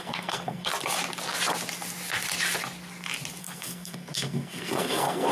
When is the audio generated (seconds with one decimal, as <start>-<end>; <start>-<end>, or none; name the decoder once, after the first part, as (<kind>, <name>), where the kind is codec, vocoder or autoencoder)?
0.0-0.7 (codec, SNAC); 3.4-5.3

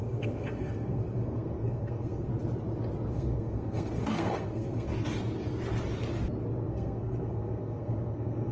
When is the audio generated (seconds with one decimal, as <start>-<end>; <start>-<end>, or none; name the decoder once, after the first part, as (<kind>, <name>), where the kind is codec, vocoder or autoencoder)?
0.0-2.3 (codec, SNAC); 3.1-4.9; 6.7-8.5